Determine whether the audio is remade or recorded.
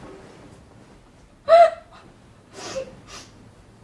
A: recorded